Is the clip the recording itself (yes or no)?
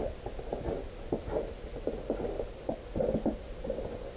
yes